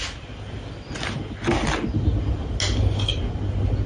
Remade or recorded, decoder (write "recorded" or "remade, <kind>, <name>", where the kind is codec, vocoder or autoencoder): recorded